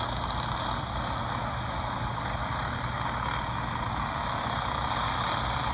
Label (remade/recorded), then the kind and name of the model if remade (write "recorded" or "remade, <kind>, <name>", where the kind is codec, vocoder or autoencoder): recorded